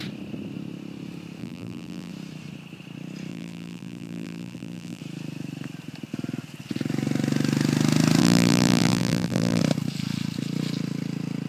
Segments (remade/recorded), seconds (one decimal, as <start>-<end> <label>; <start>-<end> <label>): 0.0-1.4 recorded; 1.4-2.1 remade; 2.1-3.3 recorded; 3.3-5.0 remade; 5.0-8.2 recorded; 8.2-9.6 remade; 9.6-11.5 recorded